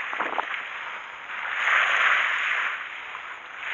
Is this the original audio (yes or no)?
yes